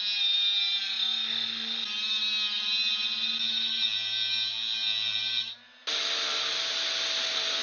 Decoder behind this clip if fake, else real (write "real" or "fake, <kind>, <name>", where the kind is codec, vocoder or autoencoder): real